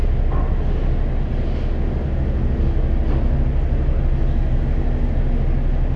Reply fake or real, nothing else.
real